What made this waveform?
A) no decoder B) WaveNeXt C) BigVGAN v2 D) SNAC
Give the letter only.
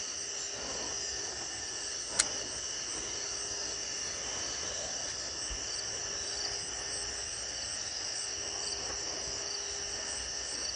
A